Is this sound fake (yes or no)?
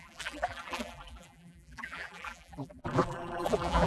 yes